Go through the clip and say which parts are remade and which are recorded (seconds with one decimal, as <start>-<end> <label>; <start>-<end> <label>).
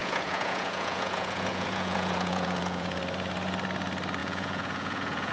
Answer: 0.0-3.0 remade; 3.0-4.2 recorded; 4.2-5.3 remade